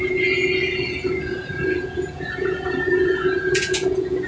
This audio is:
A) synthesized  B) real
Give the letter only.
A